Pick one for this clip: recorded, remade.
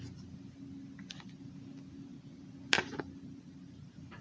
recorded